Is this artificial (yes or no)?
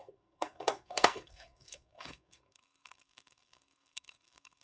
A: yes